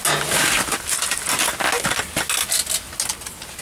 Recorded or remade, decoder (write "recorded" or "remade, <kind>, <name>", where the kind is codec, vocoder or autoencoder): recorded